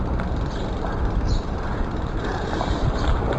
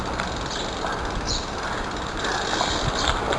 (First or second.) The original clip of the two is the second